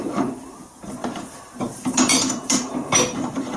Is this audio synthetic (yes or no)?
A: yes